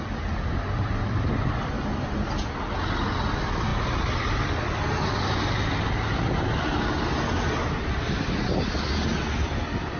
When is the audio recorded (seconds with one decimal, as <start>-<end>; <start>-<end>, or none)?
0.0-10.0